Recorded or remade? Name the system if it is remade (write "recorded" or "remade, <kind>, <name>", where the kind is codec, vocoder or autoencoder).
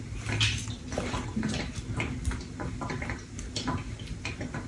recorded